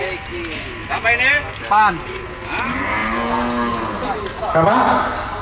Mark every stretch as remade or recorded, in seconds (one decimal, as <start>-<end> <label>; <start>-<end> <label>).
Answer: 0.0-5.4 recorded